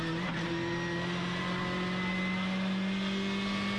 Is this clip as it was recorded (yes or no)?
yes